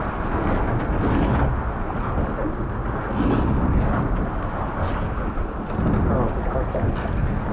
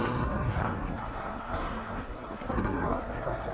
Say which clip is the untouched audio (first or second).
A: first